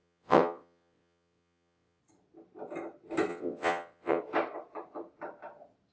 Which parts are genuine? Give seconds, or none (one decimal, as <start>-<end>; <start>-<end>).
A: 2.0-3.3; 4.2-5.9